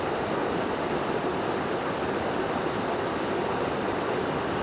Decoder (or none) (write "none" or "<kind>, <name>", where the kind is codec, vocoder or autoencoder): none